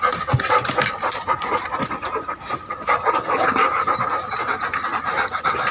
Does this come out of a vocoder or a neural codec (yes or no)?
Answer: no